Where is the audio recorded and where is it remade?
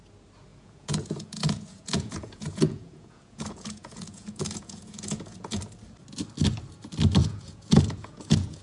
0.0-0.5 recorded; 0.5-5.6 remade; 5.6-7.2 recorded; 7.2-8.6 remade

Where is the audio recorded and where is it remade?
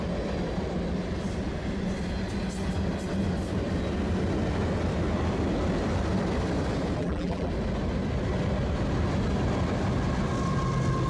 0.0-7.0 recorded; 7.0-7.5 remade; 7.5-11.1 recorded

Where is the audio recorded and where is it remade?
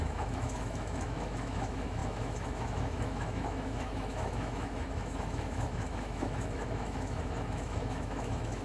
0.0-8.6 remade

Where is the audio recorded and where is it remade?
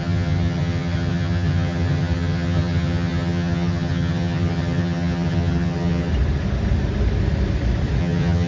0.0-6.1 remade; 6.1-8.0 recorded; 8.0-8.5 remade